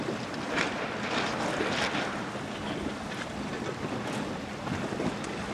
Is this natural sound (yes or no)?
yes